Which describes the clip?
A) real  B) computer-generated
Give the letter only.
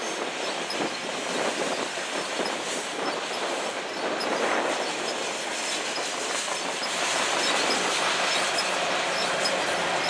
A